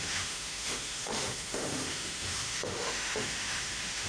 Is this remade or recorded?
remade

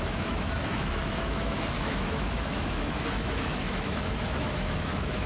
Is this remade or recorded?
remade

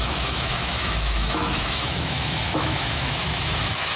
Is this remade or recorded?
remade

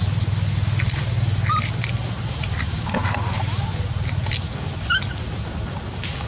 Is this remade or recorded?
recorded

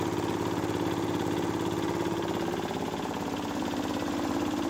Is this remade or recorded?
recorded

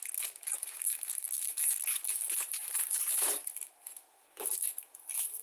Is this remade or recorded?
remade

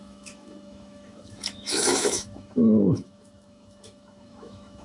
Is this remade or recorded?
remade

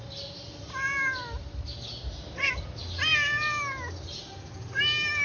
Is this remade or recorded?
recorded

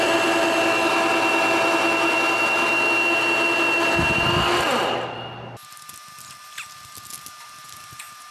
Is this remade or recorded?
recorded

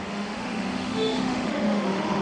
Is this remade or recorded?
remade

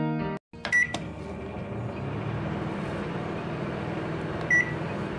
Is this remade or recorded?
recorded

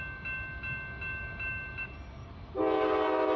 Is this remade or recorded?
recorded